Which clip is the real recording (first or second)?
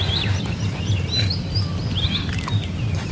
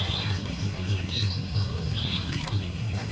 first